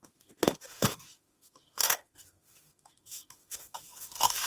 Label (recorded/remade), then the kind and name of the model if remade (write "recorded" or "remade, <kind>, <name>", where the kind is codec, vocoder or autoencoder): remade, autoencoder, DAC-VAE